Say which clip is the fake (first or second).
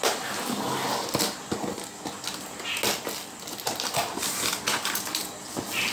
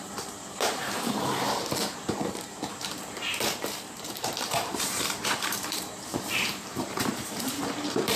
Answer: second